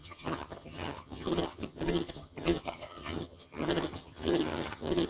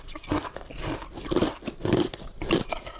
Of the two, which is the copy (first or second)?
first